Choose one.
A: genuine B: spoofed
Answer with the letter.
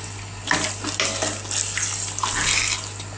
A